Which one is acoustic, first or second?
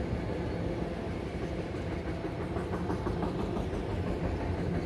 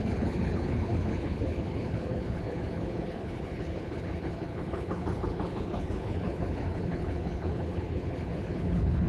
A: first